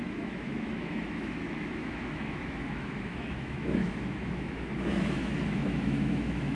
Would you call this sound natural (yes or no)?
no